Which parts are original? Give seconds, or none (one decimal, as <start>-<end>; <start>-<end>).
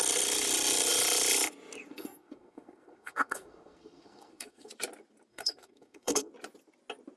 0.0-1.9; 4.7-5.3; 6.3-7.2